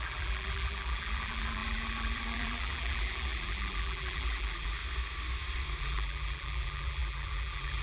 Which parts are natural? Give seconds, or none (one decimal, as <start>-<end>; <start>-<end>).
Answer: 4.8-5.8